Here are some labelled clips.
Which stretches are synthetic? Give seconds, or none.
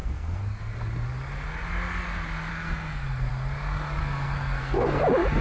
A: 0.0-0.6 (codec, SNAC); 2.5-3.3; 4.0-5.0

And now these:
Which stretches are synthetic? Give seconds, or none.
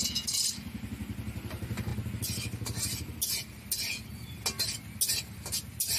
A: none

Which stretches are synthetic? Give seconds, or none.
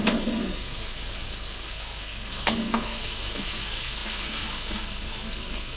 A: 0.0-5.8 (codec, SNAC)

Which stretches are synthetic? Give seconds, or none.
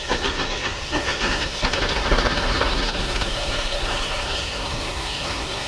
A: 0.0-5.7 (codec, SNAC)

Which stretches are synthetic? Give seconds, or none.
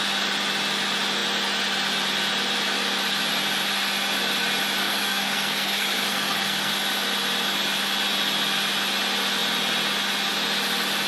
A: 4.8-6.7 (codec, SNAC)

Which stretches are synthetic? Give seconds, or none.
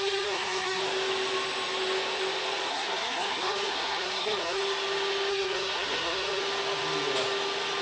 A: 0.0-0.8 (codec, SNAC); 2.7-4.6; 5.3-6.4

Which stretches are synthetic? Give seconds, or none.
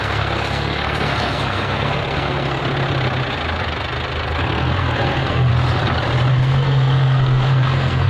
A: 0.0-2.6 (codec, SNAC); 4.4-5.5; 6.3-8.1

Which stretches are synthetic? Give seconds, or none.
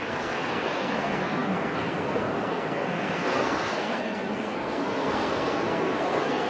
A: 0.0-6.5 (codec, SNAC)